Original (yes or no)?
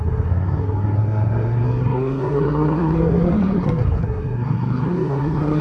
no